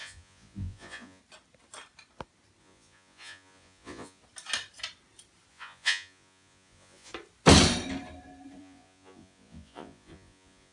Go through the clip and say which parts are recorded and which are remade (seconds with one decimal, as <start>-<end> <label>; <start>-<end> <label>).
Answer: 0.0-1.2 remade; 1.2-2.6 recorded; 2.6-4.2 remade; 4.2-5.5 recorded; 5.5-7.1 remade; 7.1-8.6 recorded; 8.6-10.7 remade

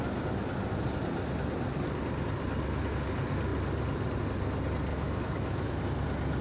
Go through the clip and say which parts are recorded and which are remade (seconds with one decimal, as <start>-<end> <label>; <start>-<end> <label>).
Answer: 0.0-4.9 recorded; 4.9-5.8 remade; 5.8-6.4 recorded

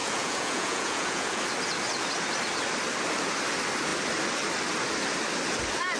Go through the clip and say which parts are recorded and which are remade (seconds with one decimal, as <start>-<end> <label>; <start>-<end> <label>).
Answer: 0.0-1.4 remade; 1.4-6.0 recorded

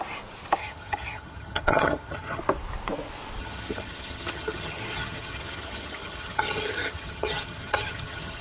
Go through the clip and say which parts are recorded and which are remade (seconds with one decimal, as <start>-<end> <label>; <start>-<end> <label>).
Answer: 0.0-0.6 recorded; 0.6-2.4 remade; 2.4-3.4 recorded; 3.4-8.4 remade